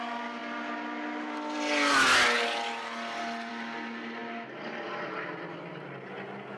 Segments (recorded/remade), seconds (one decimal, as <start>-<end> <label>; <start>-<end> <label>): 0.0-6.6 recorded